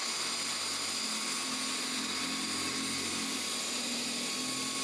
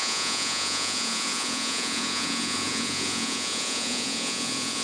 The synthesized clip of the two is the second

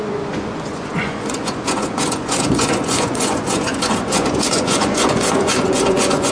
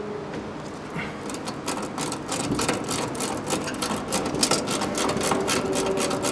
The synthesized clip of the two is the first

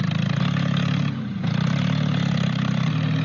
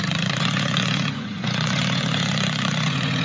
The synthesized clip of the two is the second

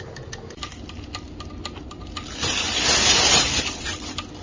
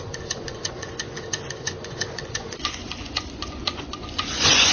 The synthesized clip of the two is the second